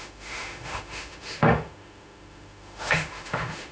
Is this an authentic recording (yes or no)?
no